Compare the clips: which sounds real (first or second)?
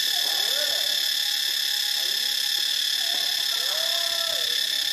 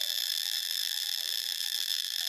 first